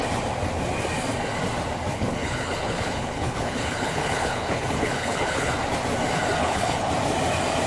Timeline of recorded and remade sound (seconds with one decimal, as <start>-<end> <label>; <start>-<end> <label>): 0.0-1.9 recorded; 1.9-5.5 remade; 5.5-6.4 recorded; 6.4-6.9 remade; 6.9-7.7 recorded

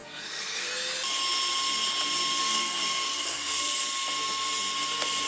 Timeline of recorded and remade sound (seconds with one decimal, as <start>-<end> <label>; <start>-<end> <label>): 0.0-0.9 remade; 0.9-2.4 recorded; 2.4-3.6 remade; 3.6-5.3 recorded

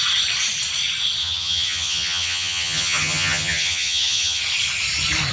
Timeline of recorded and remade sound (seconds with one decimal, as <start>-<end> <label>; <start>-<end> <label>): 0.0-1.2 recorded; 1.2-4.4 remade; 4.4-5.3 recorded

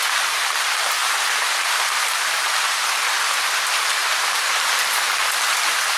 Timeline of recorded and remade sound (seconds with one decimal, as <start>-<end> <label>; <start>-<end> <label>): 0.0-6.0 recorded

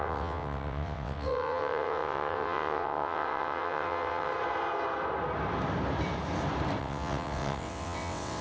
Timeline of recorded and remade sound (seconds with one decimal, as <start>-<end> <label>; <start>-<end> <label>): 0.0-4.3 remade; 4.3-6.8 recorded; 6.8-8.4 remade

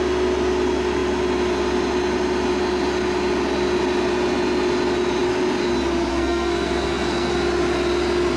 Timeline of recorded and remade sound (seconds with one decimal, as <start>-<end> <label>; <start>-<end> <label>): 0.0-6.1 recorded; 6.1-7.3 remade; 7.3-8.4 recorded

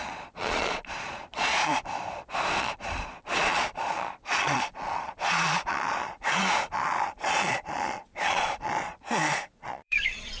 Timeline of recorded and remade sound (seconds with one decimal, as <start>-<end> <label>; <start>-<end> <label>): 0.0-1.7 remade; 1.7-2.6 recorded; 2.6-10.4 remade